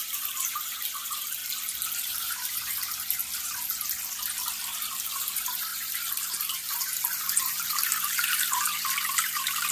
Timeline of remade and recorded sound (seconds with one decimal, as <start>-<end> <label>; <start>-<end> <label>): 0.0-1.4 remade; 1.4-1.9 recorded; 1.9-3.2 remade; 3.2-4.7 recorded; 4.7-9.7 remade

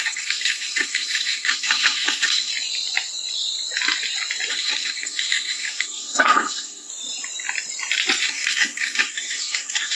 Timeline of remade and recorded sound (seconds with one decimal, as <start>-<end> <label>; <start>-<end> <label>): 0.0-2.5 remade; 2.5-4.5 recorded; 4.5-6.9 remade; 6.9-8.2 recorded; 8.2-9.9 remade

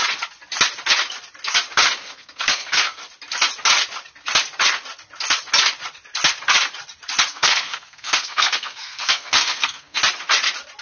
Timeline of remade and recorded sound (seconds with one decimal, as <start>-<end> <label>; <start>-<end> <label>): 0.0-2.0 recorded; 2.0-3.0 remade; 3.0-7.3 recorded; 7.3-10.0 remade; 10.0-10.8 recorded

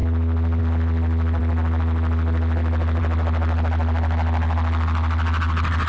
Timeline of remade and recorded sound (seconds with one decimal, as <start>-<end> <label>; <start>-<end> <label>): 0.0-5.9 recorded

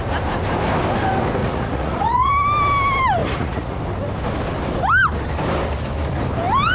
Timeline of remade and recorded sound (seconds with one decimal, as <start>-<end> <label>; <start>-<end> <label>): 0.0-1.4 recorded; 1.4-2.3 remade; 2.3-3.2 recorded; 3.2-3.8 remade; 3.8-6.7 recorded

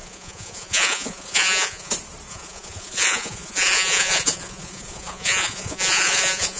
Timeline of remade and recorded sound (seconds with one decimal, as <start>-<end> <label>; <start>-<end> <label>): 0.0-1.9 remade; 1.9-2.3 recorded; 2.3-6.6 remade

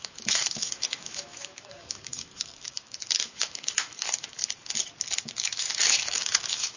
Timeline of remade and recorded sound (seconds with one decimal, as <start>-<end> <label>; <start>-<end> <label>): 0.0-4.4 remade; 4.4-5.2 recorded; 5.2-6.8 remade